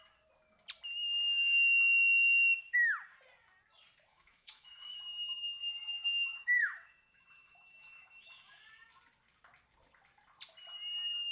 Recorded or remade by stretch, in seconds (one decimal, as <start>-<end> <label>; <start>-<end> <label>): 0.0-4.1 recorded; 4.1-8.6 remade; 8.6-11.3 recorded